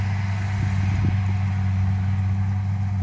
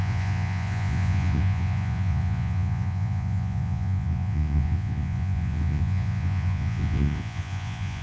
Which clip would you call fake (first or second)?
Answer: second